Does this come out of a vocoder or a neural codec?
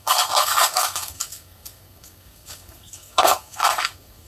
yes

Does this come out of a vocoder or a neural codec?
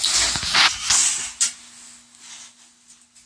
no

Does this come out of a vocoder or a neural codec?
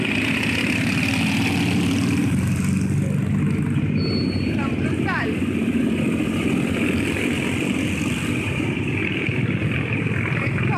no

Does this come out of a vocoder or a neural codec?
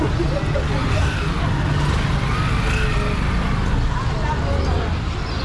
no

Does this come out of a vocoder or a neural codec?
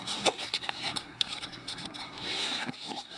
yes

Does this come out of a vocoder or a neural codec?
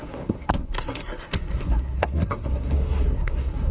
yes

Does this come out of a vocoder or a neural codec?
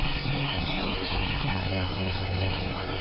yes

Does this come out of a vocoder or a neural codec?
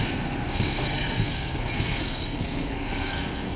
yes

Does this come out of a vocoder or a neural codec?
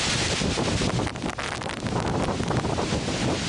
no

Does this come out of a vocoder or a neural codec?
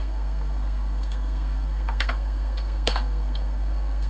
yes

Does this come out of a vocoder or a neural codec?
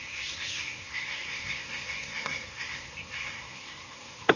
yes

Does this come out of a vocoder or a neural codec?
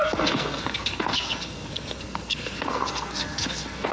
yes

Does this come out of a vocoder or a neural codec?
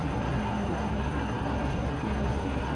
yes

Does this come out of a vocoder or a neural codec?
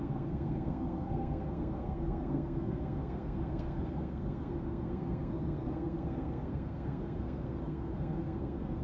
yes